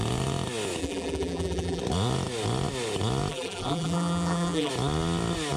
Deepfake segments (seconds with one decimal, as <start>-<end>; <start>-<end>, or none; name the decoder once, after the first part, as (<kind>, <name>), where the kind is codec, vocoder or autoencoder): 0.8-1.8 (vocoder, BigVGAN v2); 3.3-4.7